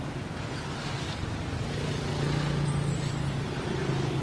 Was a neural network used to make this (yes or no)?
no